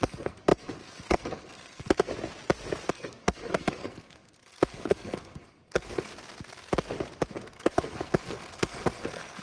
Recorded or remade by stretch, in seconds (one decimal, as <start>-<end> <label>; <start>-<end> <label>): 0.0-2.1 remade; 2.1-2.9 recorded; 2.9-6.1 remade; 6.1-7.3 recorded; 7.3-9.4 remade